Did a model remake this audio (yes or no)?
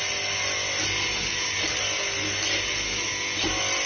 no